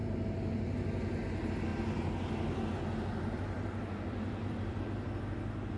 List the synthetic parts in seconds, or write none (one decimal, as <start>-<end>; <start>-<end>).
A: 1.7-4.8